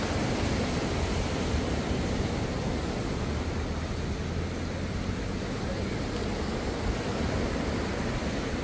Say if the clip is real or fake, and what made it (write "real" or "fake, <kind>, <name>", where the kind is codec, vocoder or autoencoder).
real